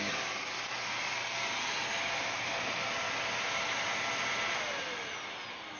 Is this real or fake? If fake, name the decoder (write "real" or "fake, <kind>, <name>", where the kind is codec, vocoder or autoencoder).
real